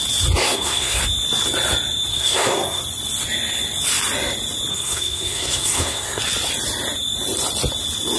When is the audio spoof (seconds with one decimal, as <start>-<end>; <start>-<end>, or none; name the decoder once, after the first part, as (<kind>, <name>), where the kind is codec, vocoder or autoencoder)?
0.4-1.0 (codec, SNAC); 2.1-2.8; 4.7-6.2